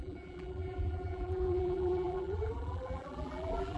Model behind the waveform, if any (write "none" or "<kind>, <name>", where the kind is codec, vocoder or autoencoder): vocoder, BigVGAN v2